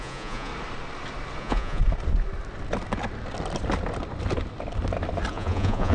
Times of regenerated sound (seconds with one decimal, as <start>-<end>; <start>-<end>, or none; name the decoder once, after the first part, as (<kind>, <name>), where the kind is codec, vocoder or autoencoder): 0.0-0.5 (vocoder, Vocos); 1.4-1.8; 5.3-5.9